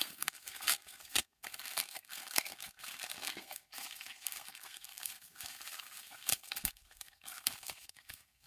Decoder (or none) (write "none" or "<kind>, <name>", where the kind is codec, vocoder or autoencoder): codec, SNAC